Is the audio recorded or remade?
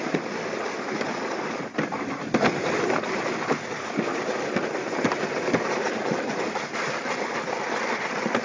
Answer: recorded